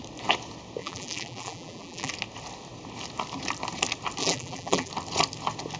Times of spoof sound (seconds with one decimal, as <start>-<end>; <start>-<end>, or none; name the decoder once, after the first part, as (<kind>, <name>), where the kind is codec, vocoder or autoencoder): 0.8-2.1 (vocoder, BigVGAN v2); 4.2-4.9